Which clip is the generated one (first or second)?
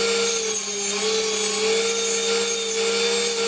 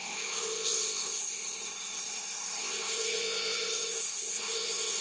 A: second